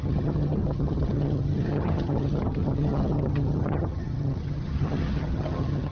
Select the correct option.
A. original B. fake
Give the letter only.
B